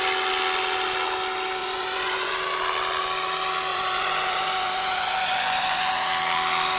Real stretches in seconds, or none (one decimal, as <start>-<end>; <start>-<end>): 0.0-1.6; 2.3-3.7; 5.9-6.8